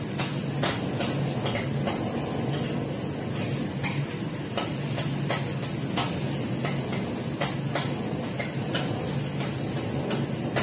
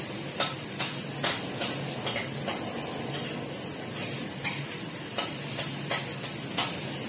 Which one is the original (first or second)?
first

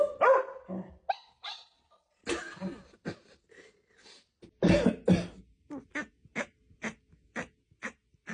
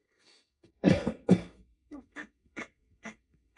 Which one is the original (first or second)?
first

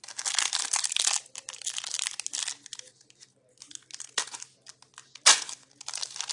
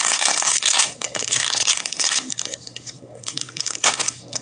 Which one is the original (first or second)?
first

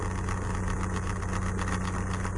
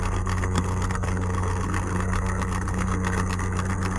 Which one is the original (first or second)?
first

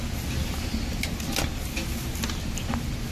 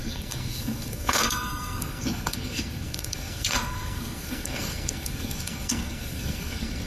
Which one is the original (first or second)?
first